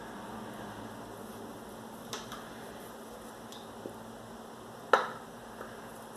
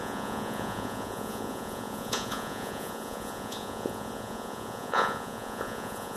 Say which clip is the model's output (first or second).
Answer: second